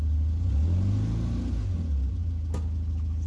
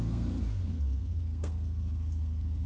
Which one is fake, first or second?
second